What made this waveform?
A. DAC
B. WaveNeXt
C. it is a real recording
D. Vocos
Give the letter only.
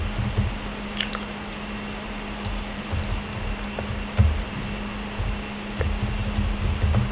C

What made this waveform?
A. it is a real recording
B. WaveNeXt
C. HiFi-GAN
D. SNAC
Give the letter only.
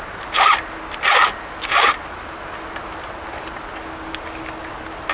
A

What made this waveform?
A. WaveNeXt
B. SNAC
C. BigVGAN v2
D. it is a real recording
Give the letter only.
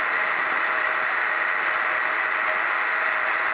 D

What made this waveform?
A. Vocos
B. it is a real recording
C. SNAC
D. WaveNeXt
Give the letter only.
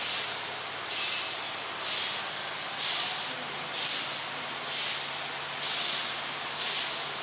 B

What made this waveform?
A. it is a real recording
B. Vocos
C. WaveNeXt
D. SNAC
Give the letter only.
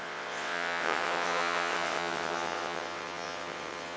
C